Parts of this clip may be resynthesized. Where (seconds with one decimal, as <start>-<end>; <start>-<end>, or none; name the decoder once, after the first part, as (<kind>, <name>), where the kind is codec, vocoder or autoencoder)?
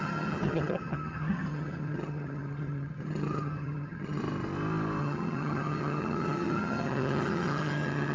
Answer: 0.0-4.2 (vocoder, HiFi-GAN); 5.0-8.1